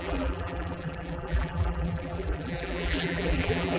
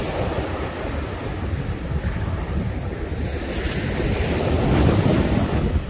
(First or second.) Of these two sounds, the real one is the second